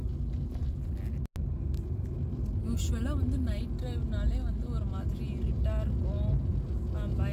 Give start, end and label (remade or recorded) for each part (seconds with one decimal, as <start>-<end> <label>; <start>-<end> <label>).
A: 0.0-7.3 recorded